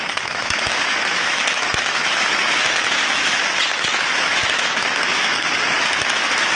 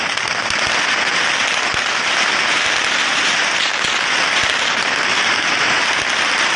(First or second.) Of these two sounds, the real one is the second